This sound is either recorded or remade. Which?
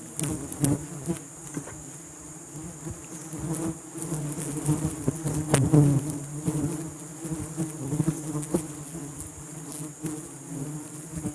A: recorded